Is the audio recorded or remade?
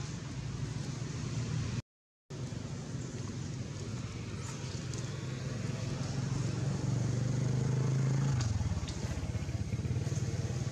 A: recorded